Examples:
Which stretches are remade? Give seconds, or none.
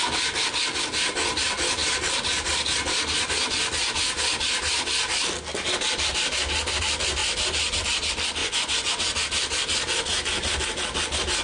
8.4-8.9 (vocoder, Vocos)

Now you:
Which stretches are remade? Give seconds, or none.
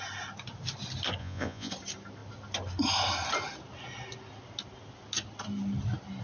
1.2-1.7 (vocoder, Vocos)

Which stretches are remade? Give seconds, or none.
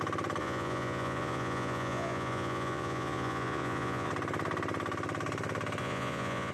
0.4-4.1 (vocoder, Vocos); 5.8-6.5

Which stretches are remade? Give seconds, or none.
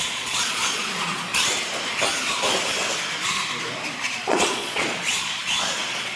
0.0-1.3 (vocoder, Vocos); 4.3-6.2